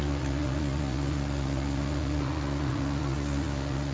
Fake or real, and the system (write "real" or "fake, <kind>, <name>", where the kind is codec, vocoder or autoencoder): fake, vocoder, Vocos